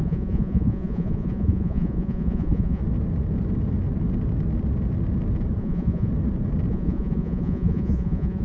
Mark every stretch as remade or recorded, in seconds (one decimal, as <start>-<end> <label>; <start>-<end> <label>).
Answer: 0.0-2.8 remade; 2.8-5.6 recorded; 5.6-6.1 remade; 6.1-6.7 recorded; 6.7-8.4 remade